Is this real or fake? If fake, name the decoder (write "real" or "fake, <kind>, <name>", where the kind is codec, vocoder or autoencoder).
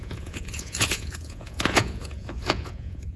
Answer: fake, vocoder, Vocos